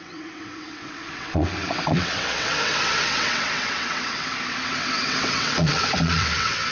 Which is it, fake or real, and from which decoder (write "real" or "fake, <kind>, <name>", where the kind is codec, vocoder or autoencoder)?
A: fake, vocoder, WaveNeXt